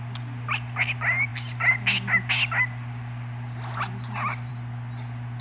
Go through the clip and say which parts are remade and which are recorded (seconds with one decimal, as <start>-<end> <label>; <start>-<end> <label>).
0.0-5.4 recorded